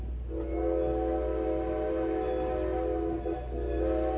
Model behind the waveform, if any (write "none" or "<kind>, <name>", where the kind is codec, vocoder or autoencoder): none